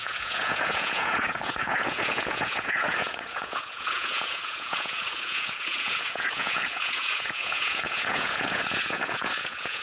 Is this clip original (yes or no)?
no